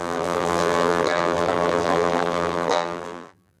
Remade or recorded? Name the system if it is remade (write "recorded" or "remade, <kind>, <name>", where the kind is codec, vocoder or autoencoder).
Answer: remade, vocoder, BigVGAN v2